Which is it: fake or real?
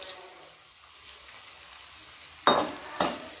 real